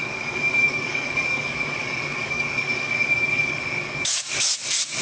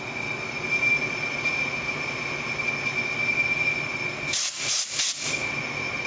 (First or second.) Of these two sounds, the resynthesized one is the first